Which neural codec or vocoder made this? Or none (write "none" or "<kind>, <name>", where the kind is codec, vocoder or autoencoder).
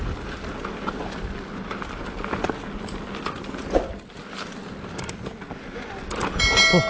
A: none